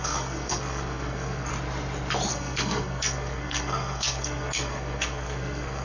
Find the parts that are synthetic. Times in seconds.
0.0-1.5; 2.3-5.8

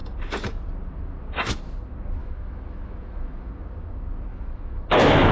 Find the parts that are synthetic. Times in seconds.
2.2-3.5; 4.3-5.3

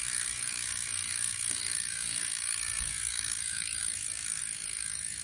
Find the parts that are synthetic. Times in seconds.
0.0-5.2

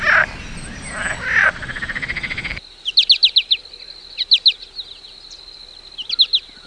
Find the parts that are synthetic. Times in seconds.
1.4-2.5

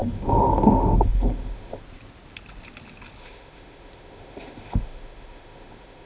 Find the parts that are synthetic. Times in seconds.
0.0-1.8; 3.2-6.1

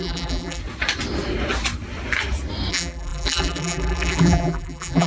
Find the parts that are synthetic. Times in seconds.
0.0-0.6; 2.7-5.1